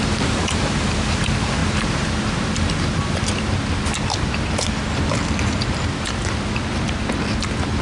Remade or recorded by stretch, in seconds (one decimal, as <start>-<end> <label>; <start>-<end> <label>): 0.0-7.8 recorded